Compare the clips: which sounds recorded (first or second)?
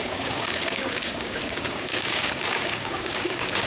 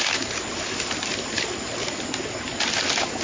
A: second